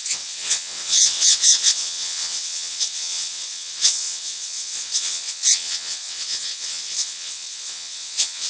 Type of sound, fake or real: fake